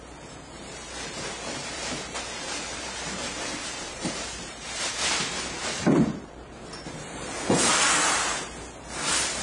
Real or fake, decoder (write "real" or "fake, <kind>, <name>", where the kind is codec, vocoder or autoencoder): fake, vocoder, BigVGAN v2